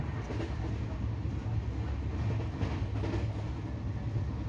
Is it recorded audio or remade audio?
recorded